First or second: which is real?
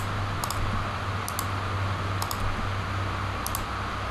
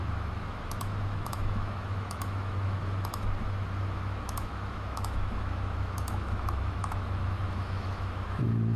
first